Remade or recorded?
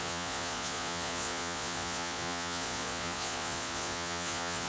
remade